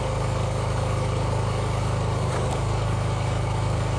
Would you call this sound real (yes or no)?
no